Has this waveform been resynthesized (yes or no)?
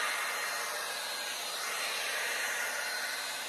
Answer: no